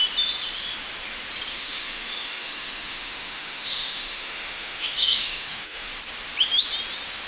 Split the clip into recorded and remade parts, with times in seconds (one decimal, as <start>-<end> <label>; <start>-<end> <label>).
0.0-1.5 recorded; 1.5-5.9 remade; 5.9-7.3 recorded